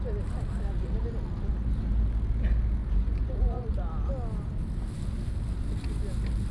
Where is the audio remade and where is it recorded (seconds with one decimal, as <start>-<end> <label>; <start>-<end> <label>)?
0.0-2.8 recorded; 2.8-3.9 remade; 3.9-6.5 recorded